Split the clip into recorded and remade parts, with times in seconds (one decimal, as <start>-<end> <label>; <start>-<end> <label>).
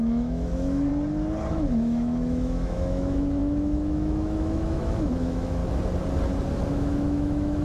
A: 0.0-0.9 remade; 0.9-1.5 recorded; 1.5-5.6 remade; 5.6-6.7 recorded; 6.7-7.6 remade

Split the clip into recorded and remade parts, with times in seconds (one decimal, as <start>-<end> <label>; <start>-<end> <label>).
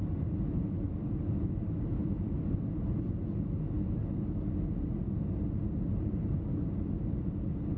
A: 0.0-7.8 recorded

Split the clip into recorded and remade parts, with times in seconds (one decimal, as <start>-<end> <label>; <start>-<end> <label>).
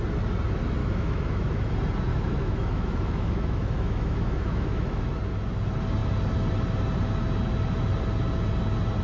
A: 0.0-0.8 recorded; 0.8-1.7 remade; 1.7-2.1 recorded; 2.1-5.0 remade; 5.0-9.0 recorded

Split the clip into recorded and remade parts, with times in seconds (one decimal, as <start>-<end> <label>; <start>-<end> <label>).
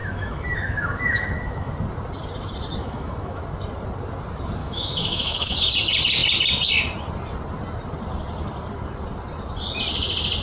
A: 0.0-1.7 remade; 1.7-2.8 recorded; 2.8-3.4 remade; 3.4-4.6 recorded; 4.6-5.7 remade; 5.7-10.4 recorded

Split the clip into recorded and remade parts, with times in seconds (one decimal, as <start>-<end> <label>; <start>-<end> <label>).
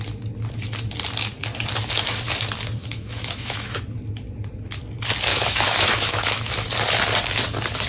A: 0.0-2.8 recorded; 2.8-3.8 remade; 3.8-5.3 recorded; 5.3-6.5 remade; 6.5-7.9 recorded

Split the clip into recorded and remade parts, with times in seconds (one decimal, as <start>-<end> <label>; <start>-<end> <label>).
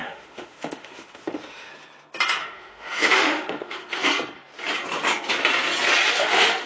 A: 0.0-1.7 remade; 1.7-2.4 recorded; 2.4-4.1 remade; 4.1-6.1 recorded; 6.1-6.7 remade